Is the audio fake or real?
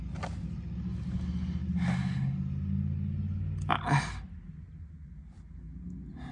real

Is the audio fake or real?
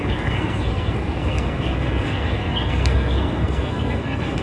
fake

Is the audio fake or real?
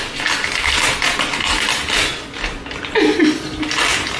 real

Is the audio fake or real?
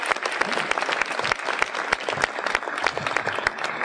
real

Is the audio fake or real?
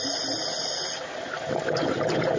real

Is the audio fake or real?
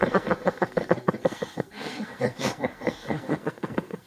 fake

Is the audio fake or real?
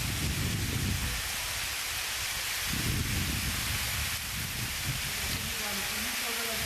real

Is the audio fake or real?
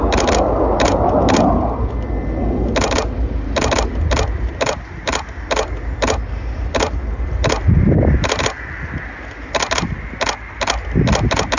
real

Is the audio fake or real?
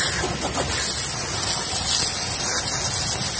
real